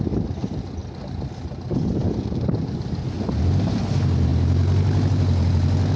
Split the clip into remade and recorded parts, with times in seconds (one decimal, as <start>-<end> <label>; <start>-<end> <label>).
0.0-6.0 recorded